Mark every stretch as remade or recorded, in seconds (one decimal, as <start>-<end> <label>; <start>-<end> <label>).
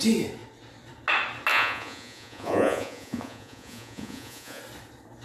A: 0.0-1.5 recorded; 1.5-4.6 remade; 4.6-5.2 recorded